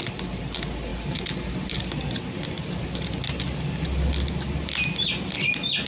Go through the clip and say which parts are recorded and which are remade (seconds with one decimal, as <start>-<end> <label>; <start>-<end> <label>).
0.0-5.9 recorded